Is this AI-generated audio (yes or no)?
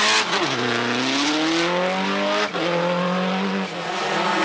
no